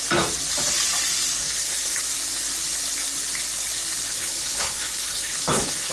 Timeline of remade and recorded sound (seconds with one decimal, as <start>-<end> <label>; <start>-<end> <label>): 0.0-1.4 recorded; 1.4-2.0 remade; 2.0-4.1 recorded; 4.1-5.9 remade